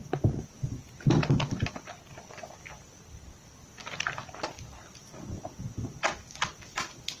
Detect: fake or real fake